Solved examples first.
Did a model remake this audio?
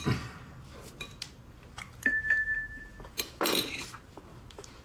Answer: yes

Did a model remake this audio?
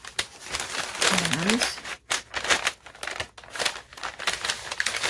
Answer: no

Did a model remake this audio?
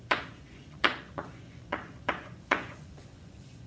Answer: yes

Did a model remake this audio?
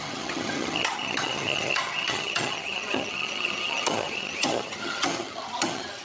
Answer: yes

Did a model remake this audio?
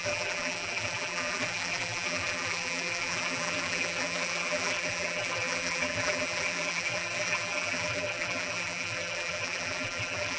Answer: yes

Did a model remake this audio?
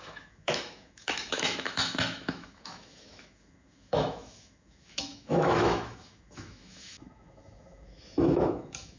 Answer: yes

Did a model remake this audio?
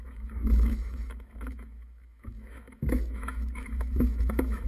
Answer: yes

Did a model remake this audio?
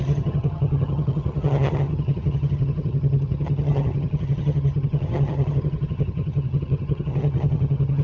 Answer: yes